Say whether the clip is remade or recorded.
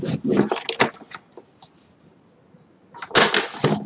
recorded